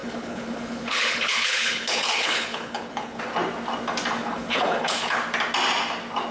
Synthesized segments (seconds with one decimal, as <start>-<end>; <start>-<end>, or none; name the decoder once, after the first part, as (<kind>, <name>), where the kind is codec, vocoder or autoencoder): 0.0-3.2 (codec, HILCodec); 4.2-5.2